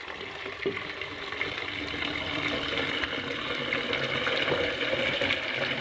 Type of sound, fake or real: real